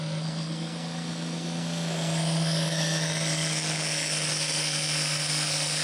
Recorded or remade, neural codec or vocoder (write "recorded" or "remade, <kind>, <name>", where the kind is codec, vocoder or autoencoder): remade, codec, SNAC